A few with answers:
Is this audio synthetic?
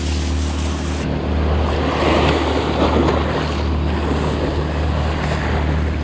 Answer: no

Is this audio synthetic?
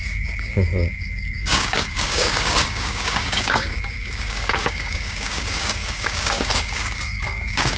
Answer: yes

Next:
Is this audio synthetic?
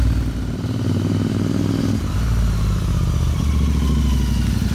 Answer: no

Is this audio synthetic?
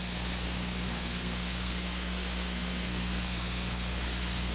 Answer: yes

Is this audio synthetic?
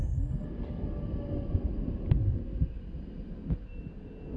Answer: no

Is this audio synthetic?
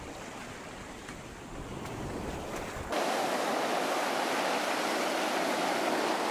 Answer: no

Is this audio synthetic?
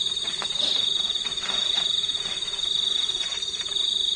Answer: no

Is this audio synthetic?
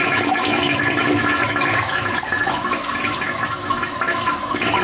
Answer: yes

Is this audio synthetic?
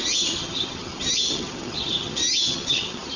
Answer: yes